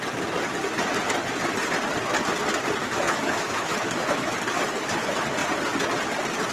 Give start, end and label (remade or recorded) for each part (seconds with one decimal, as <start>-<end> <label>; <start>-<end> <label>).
0.0-2.8 recorded; 2.8-4.4 remade; 4.4-6.5 recorded